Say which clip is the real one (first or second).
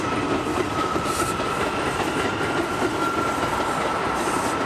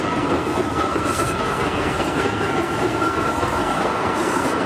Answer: first